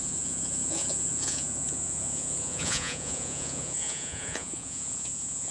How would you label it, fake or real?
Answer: fake